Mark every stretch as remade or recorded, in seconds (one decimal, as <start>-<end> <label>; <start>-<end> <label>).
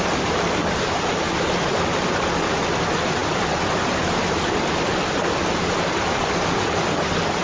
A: 0.0-7.4 recorded